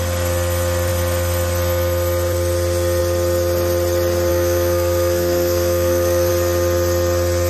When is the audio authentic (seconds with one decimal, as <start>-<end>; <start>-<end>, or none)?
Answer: 0.0-4.3; 6.3-7.5